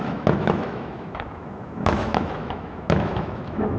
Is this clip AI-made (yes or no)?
yes